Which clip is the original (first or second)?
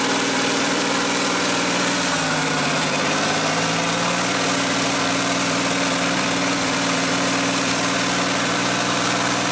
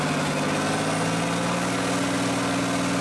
second